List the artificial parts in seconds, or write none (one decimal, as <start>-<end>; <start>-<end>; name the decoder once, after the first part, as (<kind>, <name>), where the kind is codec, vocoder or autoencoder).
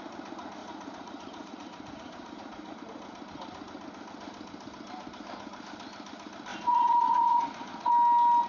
0.6-2.8 (vocoder, Vocos); 6.5-7.9